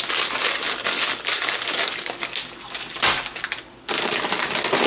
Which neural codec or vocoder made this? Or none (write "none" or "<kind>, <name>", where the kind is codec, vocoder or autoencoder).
none